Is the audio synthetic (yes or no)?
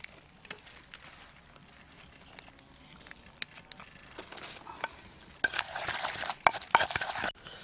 no